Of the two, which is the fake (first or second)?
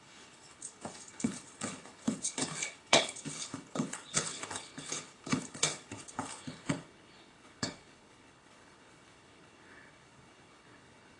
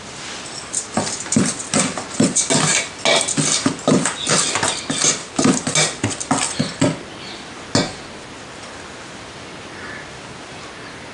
first